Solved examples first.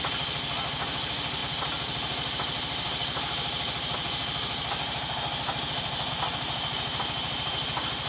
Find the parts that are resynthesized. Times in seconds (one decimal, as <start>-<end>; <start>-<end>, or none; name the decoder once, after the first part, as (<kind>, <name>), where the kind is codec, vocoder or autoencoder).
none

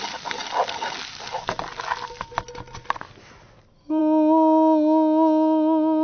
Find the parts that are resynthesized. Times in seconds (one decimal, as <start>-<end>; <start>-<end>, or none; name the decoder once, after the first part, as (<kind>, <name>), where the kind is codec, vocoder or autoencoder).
none

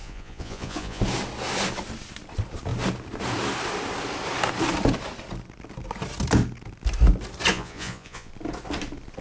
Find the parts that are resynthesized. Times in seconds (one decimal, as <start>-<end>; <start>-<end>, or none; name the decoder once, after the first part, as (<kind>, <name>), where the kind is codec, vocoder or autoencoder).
0.0-1.0 (vocoder, Vocos); 7.5-8.3